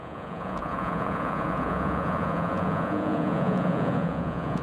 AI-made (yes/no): yes